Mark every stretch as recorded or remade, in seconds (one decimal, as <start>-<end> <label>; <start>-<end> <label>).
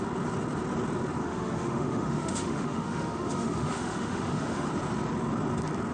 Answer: 0.0-1.2 recorded; 1.2-4.7 remade; 4.7-5.9 recorded